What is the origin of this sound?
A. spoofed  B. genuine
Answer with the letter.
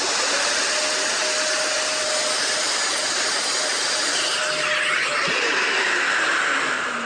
B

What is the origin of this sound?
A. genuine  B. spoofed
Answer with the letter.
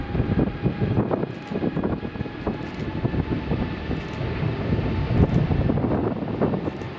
A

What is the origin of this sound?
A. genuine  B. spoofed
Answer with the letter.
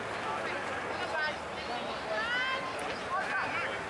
A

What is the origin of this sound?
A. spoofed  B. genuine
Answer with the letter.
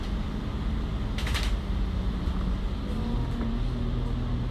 B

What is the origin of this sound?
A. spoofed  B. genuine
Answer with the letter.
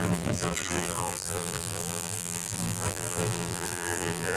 A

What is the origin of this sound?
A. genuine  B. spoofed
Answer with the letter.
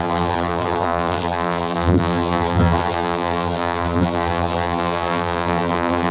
B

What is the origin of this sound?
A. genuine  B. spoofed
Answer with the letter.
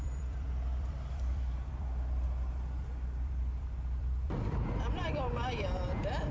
B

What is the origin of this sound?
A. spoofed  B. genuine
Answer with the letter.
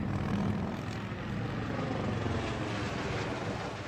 B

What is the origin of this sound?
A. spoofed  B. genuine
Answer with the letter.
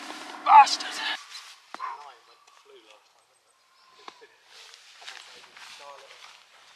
B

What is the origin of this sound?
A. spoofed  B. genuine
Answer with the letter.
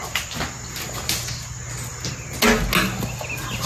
B